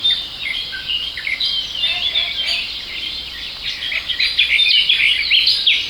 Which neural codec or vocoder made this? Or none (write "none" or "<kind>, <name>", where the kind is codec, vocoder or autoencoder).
none